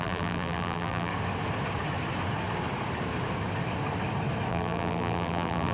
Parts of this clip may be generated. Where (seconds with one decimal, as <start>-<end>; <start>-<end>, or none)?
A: 0.0-1.1; 4.5-5.7